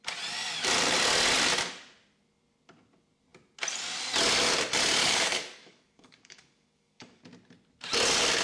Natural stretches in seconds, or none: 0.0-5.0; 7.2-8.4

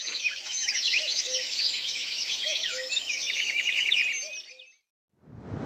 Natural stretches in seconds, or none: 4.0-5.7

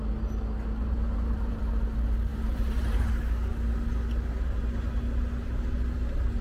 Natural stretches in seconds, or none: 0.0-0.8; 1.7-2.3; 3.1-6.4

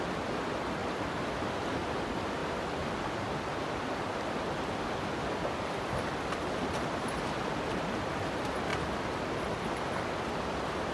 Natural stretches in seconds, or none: 0.0-0.8; 1.6-2.4; 5.9-10.9

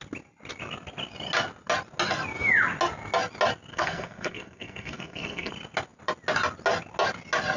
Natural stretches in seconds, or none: 0.0-3.7; 5.5-7.6

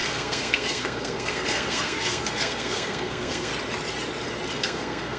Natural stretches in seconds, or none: 3.5-4.5

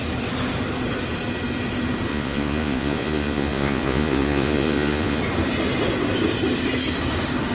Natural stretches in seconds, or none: 0.0-2.1; 5.2-7.5

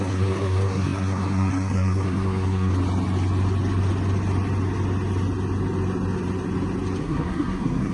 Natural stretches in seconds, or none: 2.7-7.0